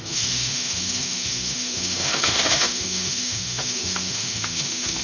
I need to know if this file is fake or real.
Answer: fake